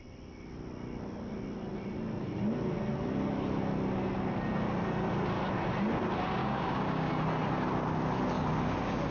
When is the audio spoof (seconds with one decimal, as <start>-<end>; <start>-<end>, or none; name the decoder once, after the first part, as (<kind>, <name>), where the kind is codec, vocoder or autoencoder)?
6.4-7.1 (codec, DAC)